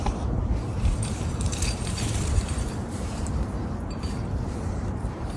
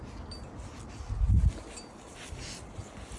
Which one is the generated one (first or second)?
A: first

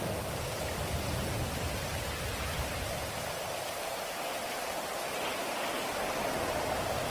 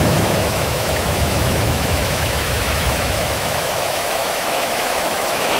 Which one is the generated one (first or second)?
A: second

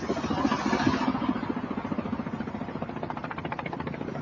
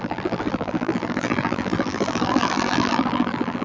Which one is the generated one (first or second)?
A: second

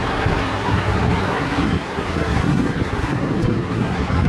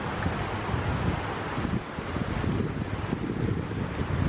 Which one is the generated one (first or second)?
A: first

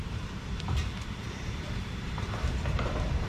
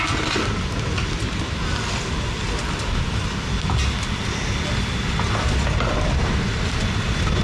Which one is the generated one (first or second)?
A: first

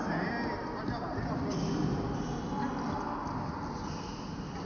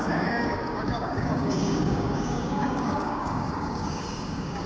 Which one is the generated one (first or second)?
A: second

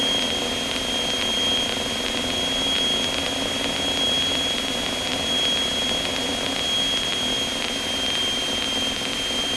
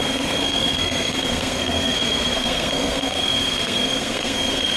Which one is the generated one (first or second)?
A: second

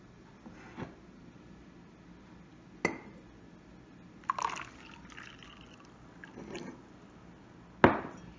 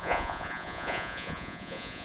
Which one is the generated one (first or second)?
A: second